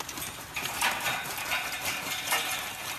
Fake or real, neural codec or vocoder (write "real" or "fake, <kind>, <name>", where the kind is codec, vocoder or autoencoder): fake, vocoder, BigVGAN v2